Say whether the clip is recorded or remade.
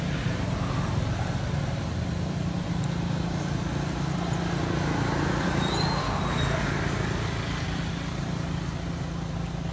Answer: recorded